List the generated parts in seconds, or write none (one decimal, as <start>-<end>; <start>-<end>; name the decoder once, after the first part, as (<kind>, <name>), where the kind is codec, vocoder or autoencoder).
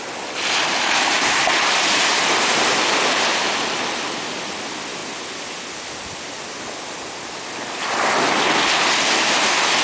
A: none